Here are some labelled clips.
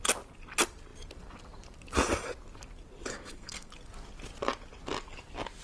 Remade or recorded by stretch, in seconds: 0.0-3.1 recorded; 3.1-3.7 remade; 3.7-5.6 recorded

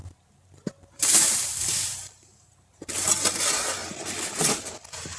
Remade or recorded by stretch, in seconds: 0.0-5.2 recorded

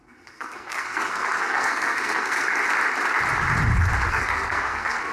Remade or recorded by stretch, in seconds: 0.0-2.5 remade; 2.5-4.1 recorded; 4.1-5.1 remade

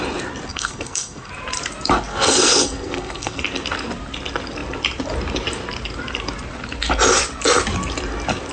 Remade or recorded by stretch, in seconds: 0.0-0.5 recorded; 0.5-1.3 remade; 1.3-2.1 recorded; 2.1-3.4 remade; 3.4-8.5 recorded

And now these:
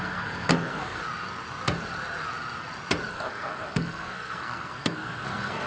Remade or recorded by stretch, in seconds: 0.0-1.0 remade; 1.0-3.1 recorded; 3.1-5.7 remade

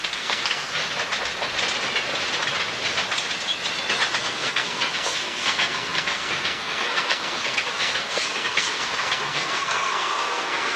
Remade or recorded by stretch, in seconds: 0.0-0.8 remade; 0.8-4.2 recorded; 4.2-10.8 remade